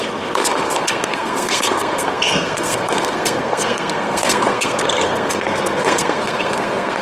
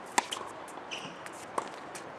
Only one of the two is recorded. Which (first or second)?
second